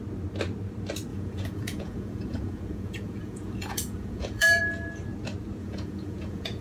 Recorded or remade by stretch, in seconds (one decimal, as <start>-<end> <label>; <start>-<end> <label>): 0.0-1.1 recorded; 1.1-4.6 remade; 4.6-5.6 recorded; 5.6-6.6 remade